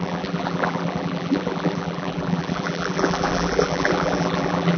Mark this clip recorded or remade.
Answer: remade